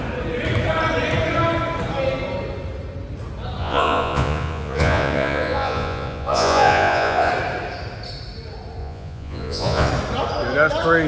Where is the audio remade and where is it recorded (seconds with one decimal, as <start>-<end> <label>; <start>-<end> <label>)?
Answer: 0.0-3.6 recorded; 3.6-7.3 remade; 7.3-8.8 recorded; 8.8-9.9 remade; 9.9-11.1 recorded